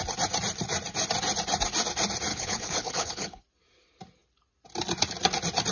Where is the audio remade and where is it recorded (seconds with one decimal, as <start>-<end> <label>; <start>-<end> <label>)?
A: 0.0-2.3 recorded; 2.3-3.4 remade; 3.4-5.7 recorded